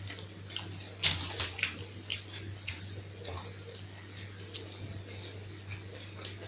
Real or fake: real